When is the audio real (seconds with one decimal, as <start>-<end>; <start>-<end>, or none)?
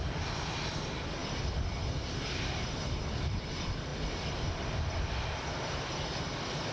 0.0-6.7